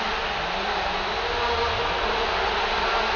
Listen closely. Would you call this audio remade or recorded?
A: recorded